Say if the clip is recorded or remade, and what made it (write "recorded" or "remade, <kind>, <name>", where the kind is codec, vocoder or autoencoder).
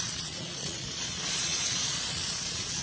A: remade, vocoder, Vocos